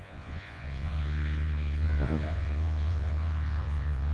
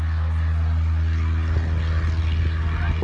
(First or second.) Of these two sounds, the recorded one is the second